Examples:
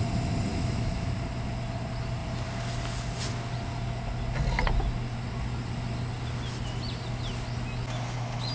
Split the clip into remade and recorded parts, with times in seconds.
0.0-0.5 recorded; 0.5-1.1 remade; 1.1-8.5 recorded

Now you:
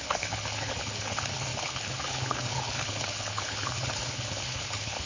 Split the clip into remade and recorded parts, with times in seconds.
0.0-5.1 remade

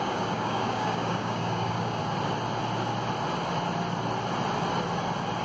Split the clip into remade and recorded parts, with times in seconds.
0.0-2.0 remade; 2.0-5.4 recorded

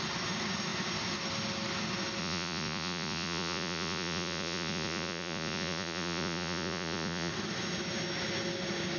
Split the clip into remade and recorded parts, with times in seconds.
0.0-2.2 recorded; 2.2-7.3 remade; 7.3-9.0 recorded